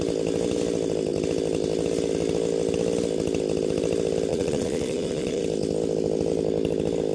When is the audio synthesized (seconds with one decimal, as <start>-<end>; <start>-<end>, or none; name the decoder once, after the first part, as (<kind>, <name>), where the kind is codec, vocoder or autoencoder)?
4.3-5.4 (vocoder, Vocos)